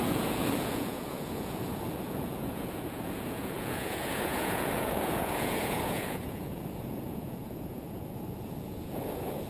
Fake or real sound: fake